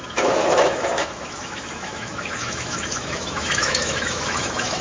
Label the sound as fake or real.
fake